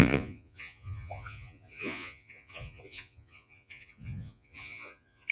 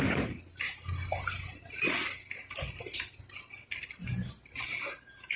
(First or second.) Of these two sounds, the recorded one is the second